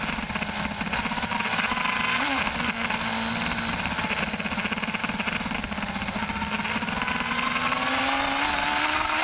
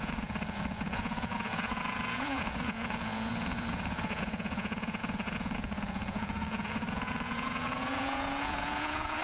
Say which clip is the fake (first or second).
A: second